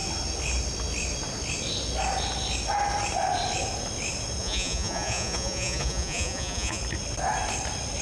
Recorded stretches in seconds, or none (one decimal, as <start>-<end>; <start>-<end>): 0.0-4.4; 6.8-8.0